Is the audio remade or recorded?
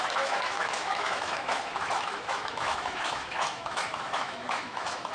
remade